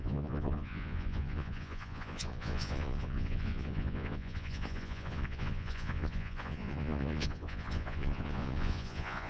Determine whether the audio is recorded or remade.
remade